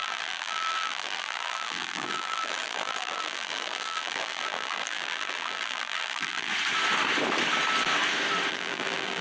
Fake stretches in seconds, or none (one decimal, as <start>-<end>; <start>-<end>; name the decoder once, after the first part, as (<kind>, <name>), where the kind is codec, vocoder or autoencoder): 0.0-6.5 (vocoder, BigVGAN v2); 8.5-9.2

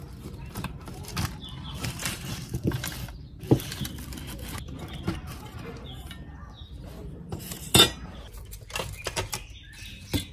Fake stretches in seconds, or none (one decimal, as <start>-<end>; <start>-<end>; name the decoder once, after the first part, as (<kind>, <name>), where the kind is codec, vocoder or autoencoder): 0.0-1.0 (vocoder, BigVGAN v2); 1.6-2.5; 7.0-7.7

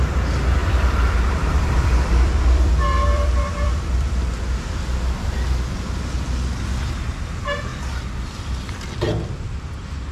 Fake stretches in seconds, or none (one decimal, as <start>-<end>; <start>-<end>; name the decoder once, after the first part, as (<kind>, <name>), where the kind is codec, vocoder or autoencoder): 0.6-4.4 (vocoder, BigVGAN v2); 7.7-8.7

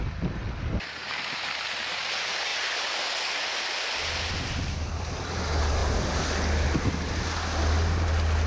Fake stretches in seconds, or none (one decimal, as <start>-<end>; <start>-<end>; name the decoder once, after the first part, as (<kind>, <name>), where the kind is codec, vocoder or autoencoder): 2.5-4.3 (vocoder, BigVGAN v2)

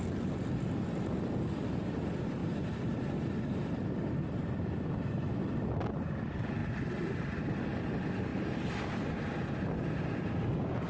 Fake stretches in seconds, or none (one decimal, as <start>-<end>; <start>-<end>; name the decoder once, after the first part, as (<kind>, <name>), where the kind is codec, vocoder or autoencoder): 2.4-3.6 (vocoder, BigVGAN v2); 8.3-9.1

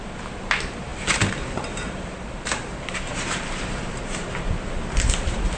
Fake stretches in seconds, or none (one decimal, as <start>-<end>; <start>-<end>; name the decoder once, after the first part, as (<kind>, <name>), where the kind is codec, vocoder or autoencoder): 0.9-4.3 (vocoder, BigVGAN v2)

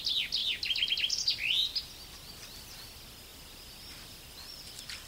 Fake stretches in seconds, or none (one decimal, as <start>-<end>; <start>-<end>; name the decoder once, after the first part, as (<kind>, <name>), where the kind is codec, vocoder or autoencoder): 0.4-0.9 (vocoder, BigVGAN v2)